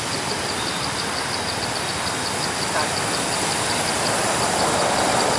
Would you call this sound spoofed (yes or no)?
yes